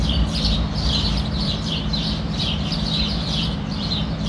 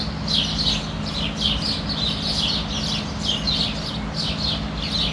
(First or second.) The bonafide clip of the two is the second